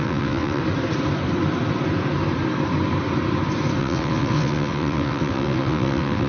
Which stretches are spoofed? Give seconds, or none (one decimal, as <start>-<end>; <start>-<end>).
0.0-0.6; 3.8-6.3